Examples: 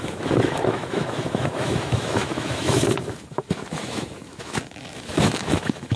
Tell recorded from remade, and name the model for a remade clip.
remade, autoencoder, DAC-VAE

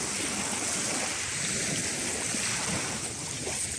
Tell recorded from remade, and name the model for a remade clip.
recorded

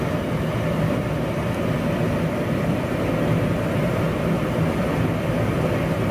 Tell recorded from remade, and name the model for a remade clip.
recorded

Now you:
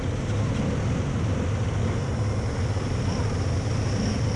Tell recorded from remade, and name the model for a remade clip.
recorded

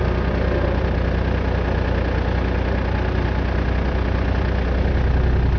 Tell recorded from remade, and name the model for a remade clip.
recorded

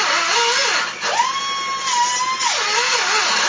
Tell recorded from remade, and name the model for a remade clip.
recorded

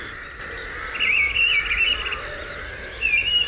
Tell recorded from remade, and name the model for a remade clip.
recorded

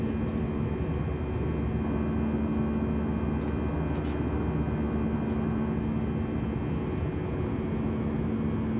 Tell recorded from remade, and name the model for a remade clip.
recorded